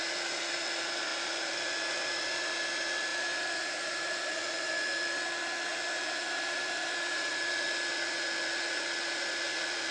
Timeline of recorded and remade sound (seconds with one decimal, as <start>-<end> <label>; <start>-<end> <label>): 0.0-3.1 recorded; 3.1-4.3 remade; 4.3-5.7 recorded; 5.7-7.3 remade; 7.3-9.9 recorded